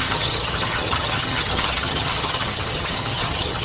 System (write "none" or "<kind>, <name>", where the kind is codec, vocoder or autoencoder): vocoder, HiFi-GAN